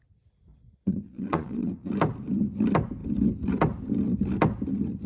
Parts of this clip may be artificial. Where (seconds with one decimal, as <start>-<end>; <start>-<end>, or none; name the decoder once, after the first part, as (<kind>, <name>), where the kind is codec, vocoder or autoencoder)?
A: 0.5-1.9 (vocoder, Vocos)

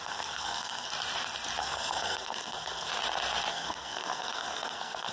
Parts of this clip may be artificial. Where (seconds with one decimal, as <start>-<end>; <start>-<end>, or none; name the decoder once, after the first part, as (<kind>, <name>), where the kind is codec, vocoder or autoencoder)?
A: 0.0-0.9 (codec, SNAC); 1.6-2.9; 3.5-5.1